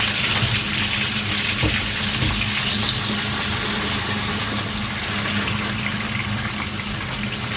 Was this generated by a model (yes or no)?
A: no